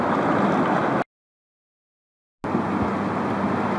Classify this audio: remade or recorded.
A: recorded